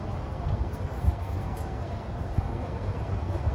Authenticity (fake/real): fake